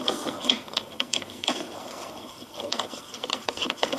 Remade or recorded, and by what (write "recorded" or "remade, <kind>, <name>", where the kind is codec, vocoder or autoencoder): remade, codec, SNAC